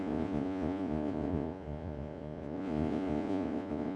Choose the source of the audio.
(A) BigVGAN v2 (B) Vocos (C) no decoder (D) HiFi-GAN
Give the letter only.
B